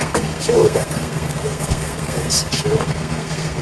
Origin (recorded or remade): remade